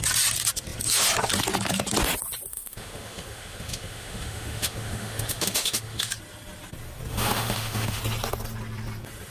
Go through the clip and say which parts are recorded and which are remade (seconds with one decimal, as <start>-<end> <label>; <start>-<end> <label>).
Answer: 0.0-2.5 recorded; 2.5-6.1 remade; 6.1-7.1 recorded; 7.1-8.0 remade; 8.0-9.3 recorded